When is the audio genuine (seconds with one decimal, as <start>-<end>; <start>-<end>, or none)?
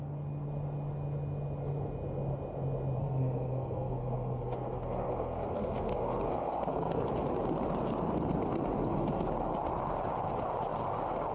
0.0-3.0; 7.0-11.3